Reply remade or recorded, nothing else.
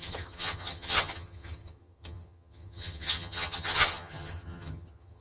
remade